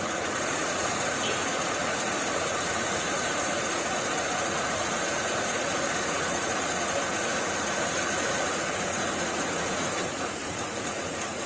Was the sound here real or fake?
fake